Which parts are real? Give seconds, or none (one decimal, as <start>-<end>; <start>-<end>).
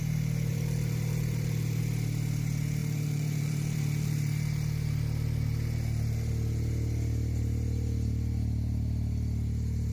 0.0-0.5; 1.8-2.8; 6.3-9.9